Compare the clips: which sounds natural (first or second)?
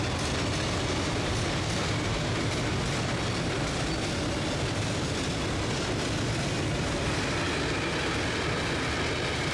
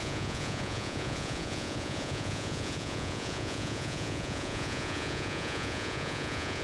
first